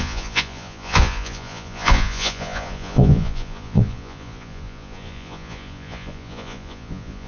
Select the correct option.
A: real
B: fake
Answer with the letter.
B